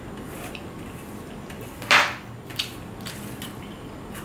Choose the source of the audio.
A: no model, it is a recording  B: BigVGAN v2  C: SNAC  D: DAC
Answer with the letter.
A